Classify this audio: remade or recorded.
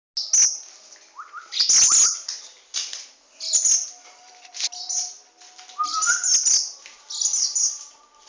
recorded